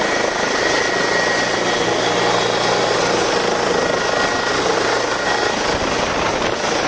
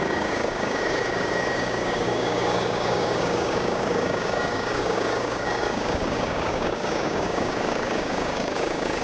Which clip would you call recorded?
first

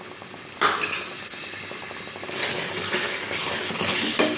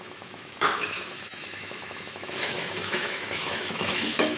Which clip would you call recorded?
first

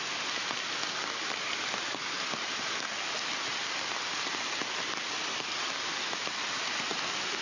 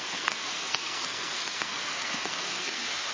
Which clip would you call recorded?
first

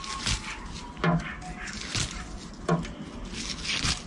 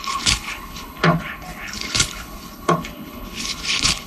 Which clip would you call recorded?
first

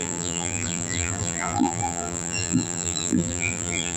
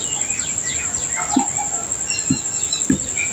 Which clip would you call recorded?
second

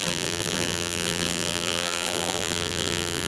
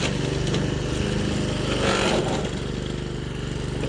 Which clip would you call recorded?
second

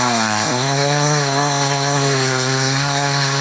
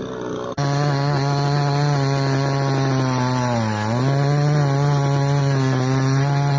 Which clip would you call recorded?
second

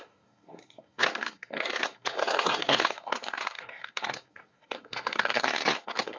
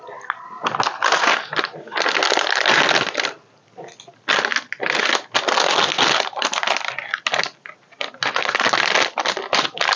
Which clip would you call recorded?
second